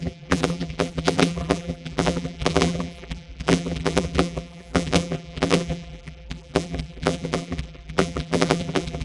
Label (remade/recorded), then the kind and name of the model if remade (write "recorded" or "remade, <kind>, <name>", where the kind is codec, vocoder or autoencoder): remade, vocoder, BigVGAN v2